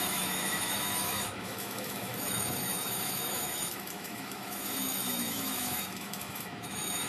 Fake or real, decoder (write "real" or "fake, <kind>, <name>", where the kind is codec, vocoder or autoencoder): fake, autoencoder, DAC-VAE